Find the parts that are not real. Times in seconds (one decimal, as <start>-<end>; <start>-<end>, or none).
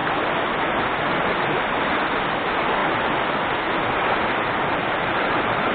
4.8-5.7